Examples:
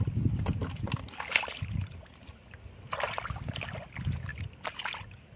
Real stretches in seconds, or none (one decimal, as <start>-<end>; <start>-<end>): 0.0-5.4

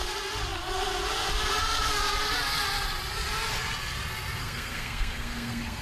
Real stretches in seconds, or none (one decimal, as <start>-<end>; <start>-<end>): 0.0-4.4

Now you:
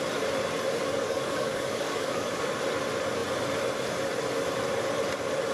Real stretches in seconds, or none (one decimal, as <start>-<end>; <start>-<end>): 0.0-0.8; 2.5-5.5

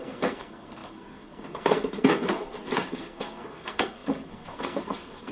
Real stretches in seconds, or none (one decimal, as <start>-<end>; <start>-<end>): none